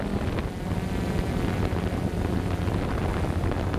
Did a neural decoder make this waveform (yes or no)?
no